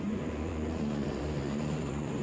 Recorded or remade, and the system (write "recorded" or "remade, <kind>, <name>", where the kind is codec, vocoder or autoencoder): remade, vocoder, Vocos